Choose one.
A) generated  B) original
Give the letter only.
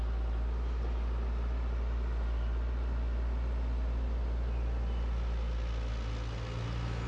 B